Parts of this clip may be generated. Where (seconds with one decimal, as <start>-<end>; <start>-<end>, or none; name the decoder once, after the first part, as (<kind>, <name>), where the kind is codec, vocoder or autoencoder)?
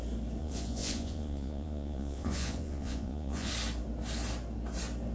0.4-3.5 (vocoder, Vocos)